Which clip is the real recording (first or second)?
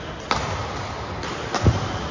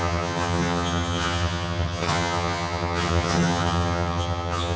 first